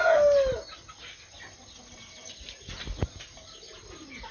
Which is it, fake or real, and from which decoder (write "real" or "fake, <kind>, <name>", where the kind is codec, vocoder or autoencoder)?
real